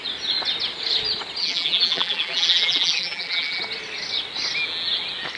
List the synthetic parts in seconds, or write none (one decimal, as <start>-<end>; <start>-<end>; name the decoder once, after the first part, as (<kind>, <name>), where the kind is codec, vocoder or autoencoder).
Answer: 1.4-3.6 (vocoder, BigVGAN v2)